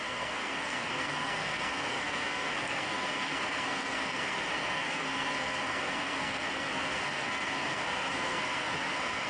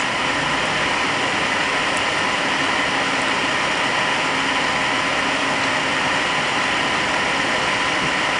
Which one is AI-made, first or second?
first